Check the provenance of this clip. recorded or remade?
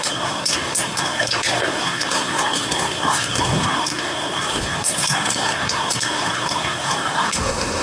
remade